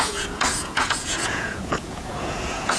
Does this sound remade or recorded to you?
remade